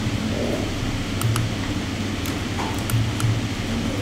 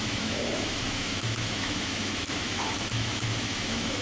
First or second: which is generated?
second